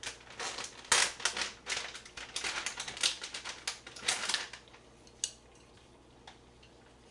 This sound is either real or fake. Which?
real